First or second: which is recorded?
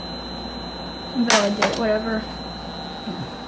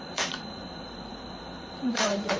first